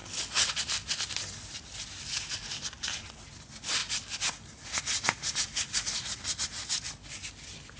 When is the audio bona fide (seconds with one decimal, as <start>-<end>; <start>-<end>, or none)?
0.5-7.8